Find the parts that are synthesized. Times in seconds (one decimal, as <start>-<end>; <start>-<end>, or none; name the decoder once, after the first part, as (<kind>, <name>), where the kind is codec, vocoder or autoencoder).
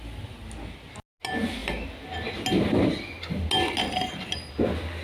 none